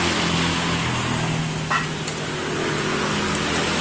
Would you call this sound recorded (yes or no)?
yes